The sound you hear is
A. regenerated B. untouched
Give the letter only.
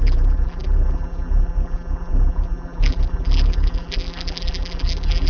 A